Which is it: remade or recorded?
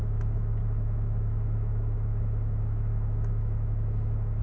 remade